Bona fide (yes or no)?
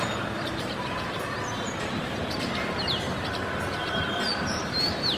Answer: no